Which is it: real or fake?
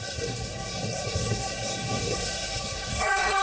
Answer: fake